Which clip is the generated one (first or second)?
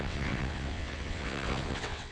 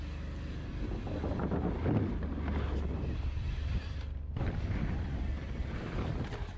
first